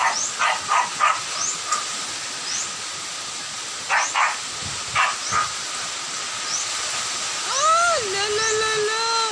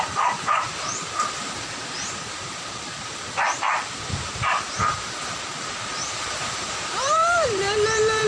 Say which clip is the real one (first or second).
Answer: first